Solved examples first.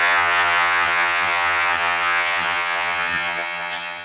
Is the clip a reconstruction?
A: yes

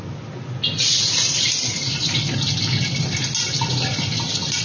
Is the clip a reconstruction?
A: no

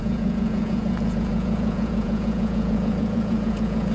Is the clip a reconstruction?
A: yes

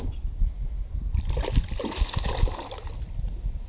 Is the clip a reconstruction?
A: no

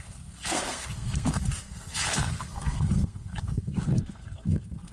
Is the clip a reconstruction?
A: yes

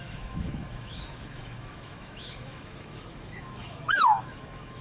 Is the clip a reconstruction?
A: yes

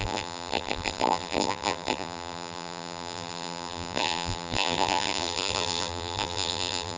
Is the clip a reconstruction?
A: yes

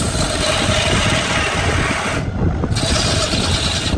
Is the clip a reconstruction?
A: no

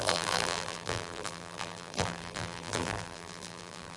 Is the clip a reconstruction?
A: yes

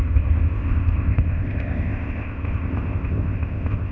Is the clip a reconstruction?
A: yes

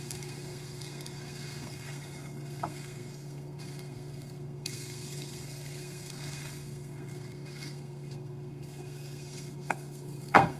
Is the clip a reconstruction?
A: yes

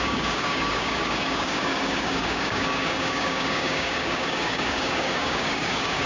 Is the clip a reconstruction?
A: yes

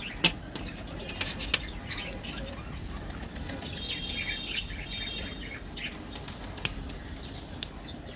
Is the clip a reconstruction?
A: no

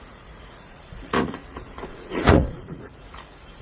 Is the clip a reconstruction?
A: yes